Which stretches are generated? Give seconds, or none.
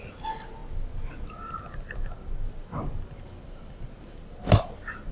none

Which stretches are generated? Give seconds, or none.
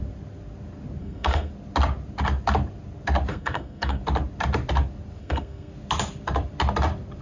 1.0-1.5; 3.3-4.0; 5.2-5.7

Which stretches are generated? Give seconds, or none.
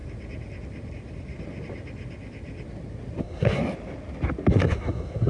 3.2-3.6; 4.5-5.3